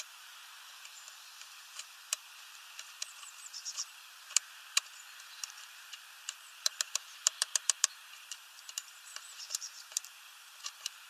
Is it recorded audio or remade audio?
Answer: remade